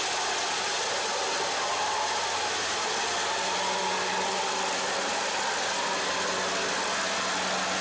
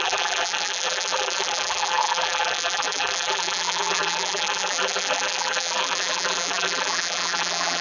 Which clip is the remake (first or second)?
second